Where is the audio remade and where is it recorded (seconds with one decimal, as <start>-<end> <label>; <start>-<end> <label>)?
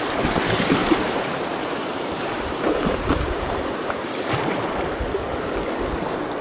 0.0-0.8 recorded; 0.8-4.6 remade; 4.6-6.4 recorded